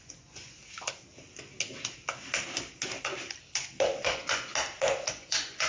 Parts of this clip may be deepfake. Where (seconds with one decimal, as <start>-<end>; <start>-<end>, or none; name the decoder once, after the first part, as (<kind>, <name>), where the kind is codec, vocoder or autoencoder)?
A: 0.0-0.6 (vocoder, Vocos); 4.0-4.5; 5.1-5.7